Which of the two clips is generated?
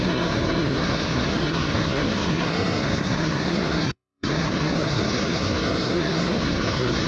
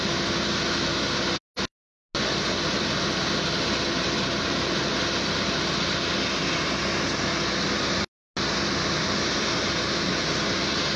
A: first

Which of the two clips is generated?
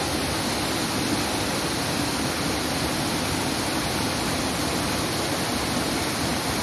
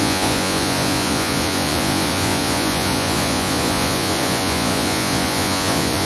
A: second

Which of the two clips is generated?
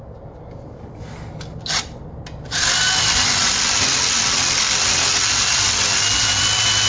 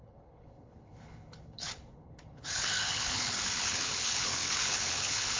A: second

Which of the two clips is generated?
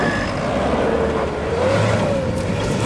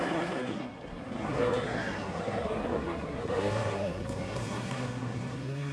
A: second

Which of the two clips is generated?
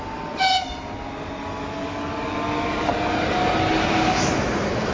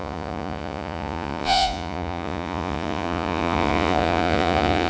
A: second